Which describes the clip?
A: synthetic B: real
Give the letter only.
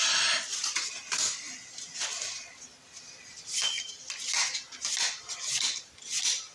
B